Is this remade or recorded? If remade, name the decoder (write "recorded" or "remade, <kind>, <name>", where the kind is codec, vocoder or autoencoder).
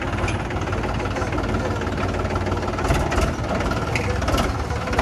recorded